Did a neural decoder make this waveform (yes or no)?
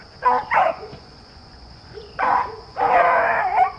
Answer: yes